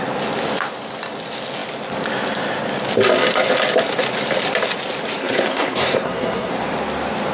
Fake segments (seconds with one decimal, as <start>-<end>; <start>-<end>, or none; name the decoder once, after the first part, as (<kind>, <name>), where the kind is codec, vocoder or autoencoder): 5.2-6.5 (codec, SNAC)